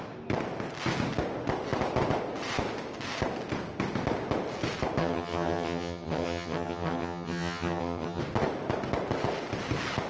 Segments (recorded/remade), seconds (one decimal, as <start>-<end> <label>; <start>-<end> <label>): 0.0-5.0 recorded; 5.0-8.2 remade; 8.2-10.1 recorded